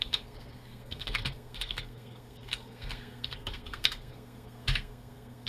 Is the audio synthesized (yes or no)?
yes